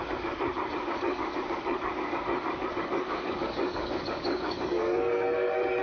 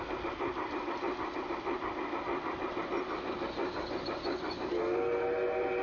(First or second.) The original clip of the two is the second